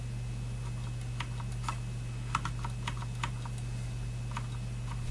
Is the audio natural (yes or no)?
yes